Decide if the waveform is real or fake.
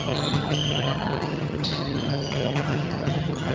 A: fake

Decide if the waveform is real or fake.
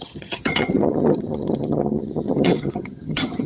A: fake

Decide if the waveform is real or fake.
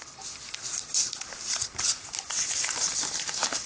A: real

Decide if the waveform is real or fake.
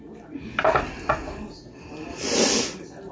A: real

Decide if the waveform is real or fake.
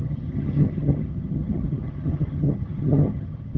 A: fake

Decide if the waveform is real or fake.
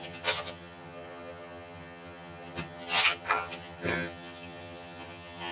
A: fake